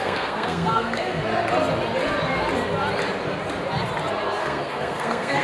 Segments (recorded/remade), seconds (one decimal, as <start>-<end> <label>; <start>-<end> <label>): 0.0-1.2 remade; 1.2-4.4 recorded; 4.4-5.4 remade